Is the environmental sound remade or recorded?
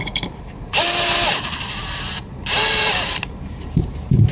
remade